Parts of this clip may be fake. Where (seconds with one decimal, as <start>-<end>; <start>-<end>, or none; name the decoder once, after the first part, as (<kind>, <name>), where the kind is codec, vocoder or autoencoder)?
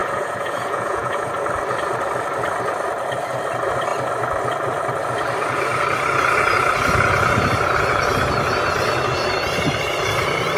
0.0-1.3 (vocoder, Vocos)